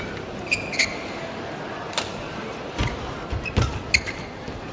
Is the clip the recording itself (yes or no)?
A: yes